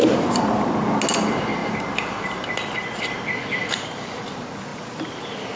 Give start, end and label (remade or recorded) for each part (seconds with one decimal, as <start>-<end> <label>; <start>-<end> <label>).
0.0-5.6 recorded